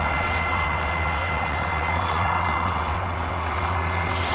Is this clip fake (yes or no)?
yes